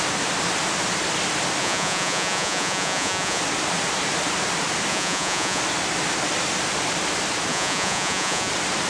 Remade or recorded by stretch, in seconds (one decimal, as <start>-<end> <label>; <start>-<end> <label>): 0.0-1.6 recorded; 1.6-3.4 remade; 3.4-4.9 recorded; 4.9-5.6 remade; 5.6-7.5 recorded; 7.5-8.5 remade; 8.5-8.9 recorded